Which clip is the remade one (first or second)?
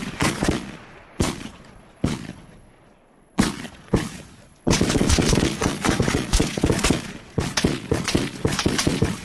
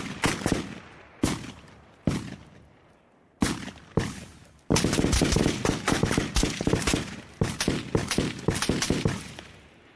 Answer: first